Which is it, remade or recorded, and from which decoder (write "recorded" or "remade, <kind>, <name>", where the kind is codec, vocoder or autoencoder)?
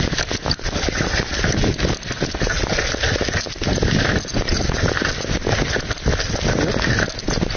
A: recorded